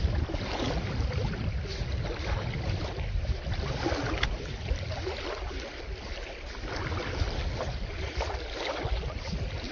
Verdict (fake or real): real